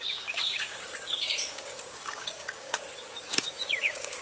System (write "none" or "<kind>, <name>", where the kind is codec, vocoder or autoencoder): codec, DAC